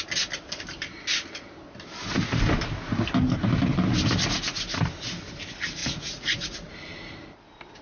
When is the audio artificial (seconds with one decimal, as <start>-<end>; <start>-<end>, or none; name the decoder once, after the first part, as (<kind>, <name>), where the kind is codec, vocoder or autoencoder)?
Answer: 5.8-6.7 (vocoder, Vocos)